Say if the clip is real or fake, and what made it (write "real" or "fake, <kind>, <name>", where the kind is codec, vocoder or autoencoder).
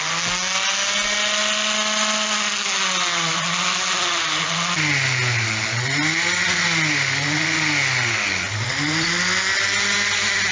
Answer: real